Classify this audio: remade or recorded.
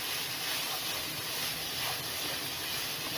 remade